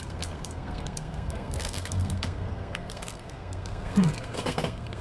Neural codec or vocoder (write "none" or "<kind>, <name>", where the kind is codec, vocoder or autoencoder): codec, SNAC